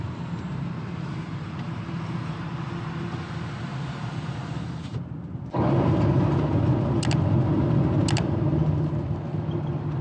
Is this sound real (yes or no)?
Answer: yes